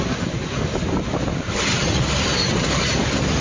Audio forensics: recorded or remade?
remade